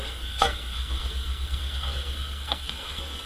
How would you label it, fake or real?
fake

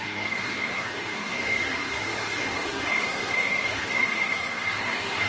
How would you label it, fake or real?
fake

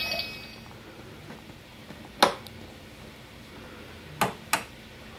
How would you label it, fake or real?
real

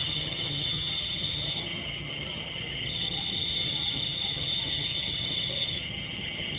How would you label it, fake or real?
fake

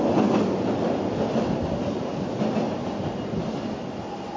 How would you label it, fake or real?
real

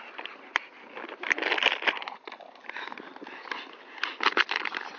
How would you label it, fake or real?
real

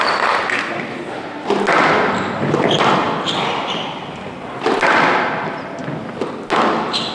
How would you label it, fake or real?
real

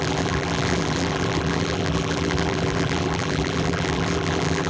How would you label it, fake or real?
fake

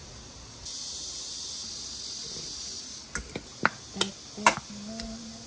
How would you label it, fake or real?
real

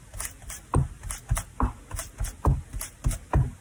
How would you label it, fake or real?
real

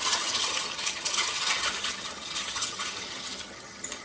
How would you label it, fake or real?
fake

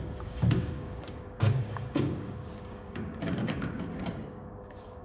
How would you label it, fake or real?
fake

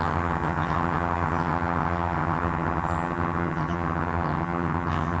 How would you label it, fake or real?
fake